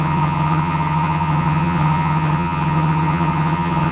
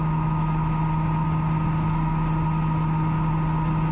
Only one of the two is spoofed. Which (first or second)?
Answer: first